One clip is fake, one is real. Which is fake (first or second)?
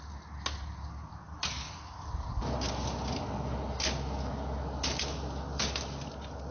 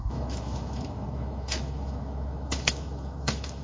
second